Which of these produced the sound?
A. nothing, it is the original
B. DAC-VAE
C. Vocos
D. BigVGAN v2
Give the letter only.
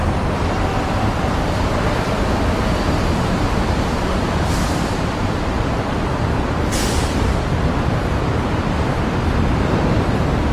D